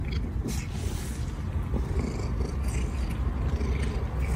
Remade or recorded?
recorded